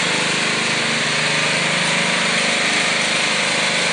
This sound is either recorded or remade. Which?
recorded